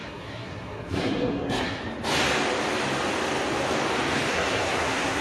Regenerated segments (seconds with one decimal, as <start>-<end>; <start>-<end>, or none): 0.0-1.8; 4.3-5.2